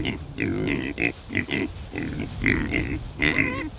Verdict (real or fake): real